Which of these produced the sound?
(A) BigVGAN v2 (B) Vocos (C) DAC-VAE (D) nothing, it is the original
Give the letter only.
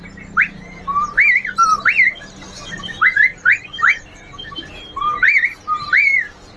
A